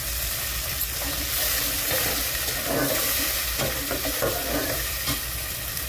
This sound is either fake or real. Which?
fake